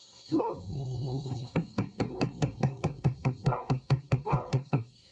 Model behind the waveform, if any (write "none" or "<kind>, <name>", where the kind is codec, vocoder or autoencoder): codec, SNAC